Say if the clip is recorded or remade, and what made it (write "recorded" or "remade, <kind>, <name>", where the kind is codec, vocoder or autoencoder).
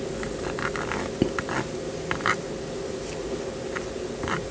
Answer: recorded